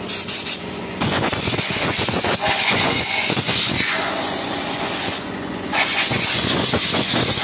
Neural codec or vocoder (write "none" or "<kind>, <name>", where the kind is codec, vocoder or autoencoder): vocoder, Vocos